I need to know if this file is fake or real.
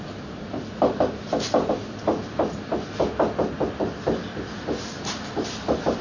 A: real